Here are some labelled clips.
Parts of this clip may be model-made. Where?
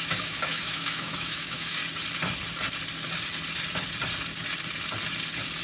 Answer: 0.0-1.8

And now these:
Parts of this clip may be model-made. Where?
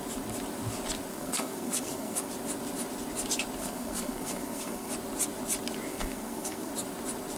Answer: 1.1-2.3; 3.6-4.9; 5.9-6.7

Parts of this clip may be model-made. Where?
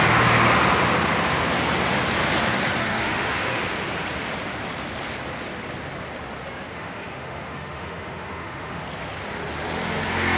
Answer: 2.8-3.6; 6.7-8.8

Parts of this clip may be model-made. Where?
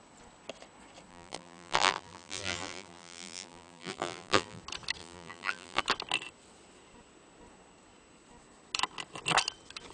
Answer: 1.1-4.6; 5.0-5.8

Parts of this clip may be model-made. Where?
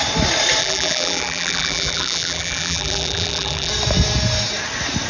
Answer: 0.6-3.7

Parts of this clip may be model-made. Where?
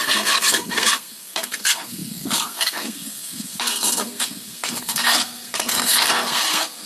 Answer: 0.0-6.9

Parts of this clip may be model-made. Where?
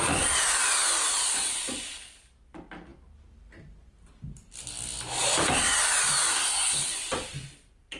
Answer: 6.3-6.8